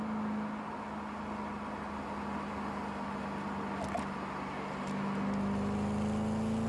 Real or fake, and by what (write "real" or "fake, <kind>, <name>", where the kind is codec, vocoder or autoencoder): real